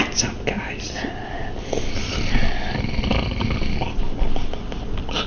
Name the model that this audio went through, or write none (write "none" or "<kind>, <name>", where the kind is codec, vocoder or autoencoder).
none